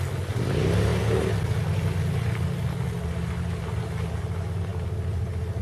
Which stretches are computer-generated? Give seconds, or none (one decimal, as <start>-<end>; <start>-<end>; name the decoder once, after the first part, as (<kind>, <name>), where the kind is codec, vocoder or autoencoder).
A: none